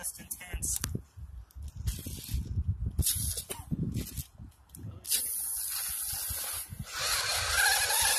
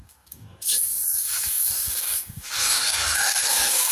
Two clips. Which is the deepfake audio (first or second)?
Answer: second